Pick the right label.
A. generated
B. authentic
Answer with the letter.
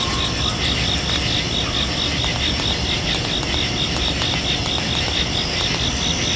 B